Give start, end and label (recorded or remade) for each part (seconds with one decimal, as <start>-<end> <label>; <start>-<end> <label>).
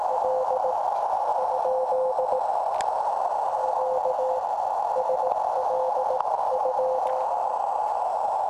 0.0-8.5 recorded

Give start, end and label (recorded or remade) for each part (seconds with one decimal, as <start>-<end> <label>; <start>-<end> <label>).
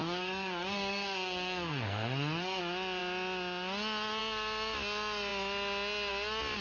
0.0-2.6 remade; 2.6-6.6 recorded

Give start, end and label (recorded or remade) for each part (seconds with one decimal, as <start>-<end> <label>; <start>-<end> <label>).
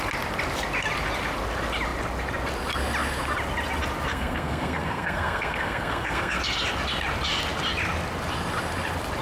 0.0-4.1 recorded; 4.1-6.4 remade; 6.4-9.2 recorded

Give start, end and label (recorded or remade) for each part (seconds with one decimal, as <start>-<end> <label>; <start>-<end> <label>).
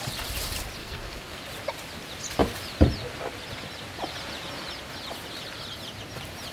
0.0-0.8 recorded; 0.8-1.4 remade; 1.4-6.5 recorded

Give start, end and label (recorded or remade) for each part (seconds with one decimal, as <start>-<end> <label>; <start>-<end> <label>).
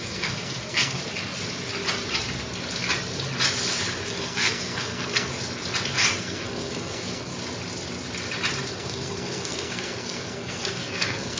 0.0-1.0 remade; 1.0-4.1 recorded; 4.1-5.3 remade; 5.3-6.2 recorded; 6.2-7.3 remade; 7.3-8.7 recorded; 8.7-11.4 remade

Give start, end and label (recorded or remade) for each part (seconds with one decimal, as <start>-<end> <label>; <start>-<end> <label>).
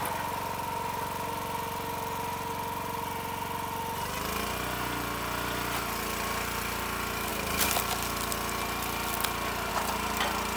0.0-10.6 recorded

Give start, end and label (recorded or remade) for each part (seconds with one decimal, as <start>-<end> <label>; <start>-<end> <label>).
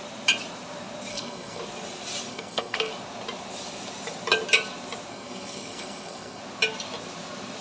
0.0-1.1 recorded; 1.1-1.6 remade; 1.6-2.3 recorded; 2.3-2.9 remade; 2.9-5.1 recorded; 5.1-6.4 remade; 6.4-7.6 recorded